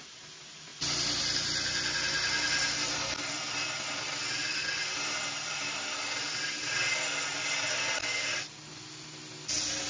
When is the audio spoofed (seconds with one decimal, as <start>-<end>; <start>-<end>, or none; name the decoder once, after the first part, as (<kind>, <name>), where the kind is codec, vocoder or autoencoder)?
none